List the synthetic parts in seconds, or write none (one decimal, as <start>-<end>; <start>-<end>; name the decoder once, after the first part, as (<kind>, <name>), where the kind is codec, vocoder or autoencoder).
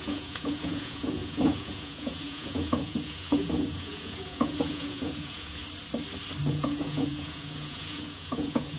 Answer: 0.0-5.6 (vocoder, Vocos); 6.5-8.8